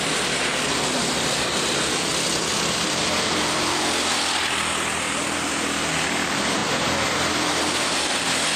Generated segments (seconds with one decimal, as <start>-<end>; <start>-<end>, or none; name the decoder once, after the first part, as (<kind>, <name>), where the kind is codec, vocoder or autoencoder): 0.0-2.1 (vocoder, BigVGAN v2); 3.0-8.6